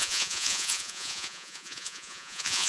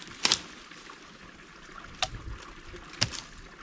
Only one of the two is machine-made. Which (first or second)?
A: first